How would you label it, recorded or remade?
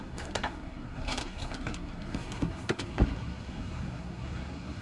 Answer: remade